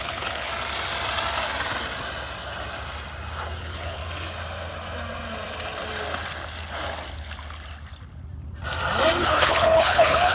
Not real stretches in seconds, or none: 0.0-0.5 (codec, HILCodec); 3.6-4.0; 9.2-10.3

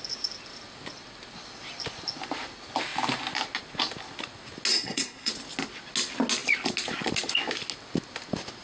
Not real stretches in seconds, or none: 4.7-5.3 (codec, SNAC)

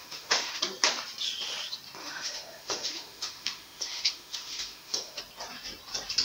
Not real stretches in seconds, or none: 0.0-0.6 (autoencoder, DAC-VAE); 2.0-5.2

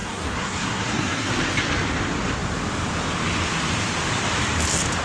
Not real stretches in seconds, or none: 0.0-1.3 (codec, SNAC)